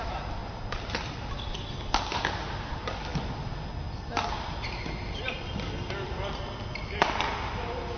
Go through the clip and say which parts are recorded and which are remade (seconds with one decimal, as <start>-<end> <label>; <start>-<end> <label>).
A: 0.0-3.1 remade; 3.1-5.8 recorded; 5.8-8.0 remade